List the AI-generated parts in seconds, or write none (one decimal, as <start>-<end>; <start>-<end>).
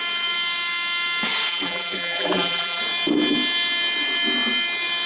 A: 1.5-2.8